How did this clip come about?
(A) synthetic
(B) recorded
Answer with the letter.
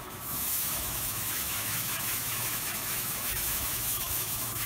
A